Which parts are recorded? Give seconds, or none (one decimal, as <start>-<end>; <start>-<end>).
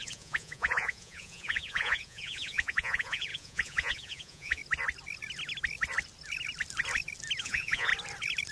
4.6-7.4; 7.9-8.5